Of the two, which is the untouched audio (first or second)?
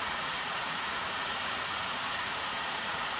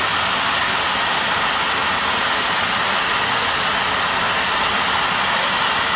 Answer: second